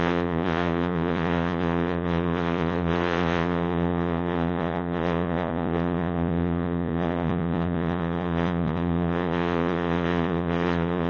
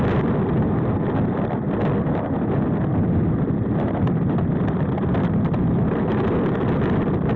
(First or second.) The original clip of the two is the second